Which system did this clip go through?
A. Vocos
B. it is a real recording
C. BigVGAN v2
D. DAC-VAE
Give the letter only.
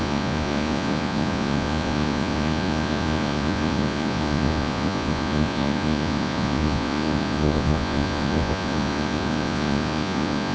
A